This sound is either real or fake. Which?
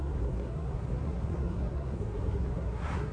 fake